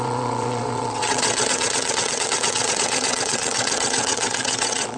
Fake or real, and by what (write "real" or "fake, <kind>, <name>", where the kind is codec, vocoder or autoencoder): fake, vocoder, WaveNeXt